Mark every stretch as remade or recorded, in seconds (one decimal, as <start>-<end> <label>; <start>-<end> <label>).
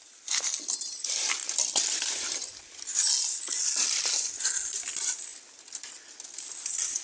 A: 0.0-7.0 recorded